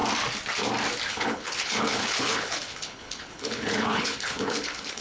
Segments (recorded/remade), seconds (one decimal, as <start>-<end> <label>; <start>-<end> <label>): 0.0-1.1 recorded; 1.1-5.0 remade